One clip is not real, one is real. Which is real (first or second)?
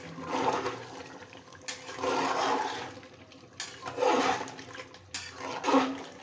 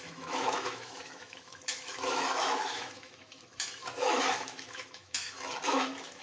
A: first